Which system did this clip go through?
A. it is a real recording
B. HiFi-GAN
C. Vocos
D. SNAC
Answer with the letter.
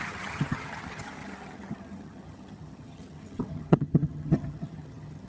B